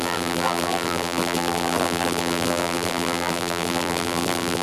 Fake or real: fake